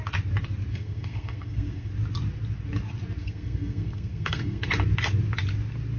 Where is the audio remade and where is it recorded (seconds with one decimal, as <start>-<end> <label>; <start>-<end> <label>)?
0.0-0.7 recorded; 0.7-1.9 remade; 1.9-3.2 recorded; 3.2-4.7 remade; 4.7-6.0 recorded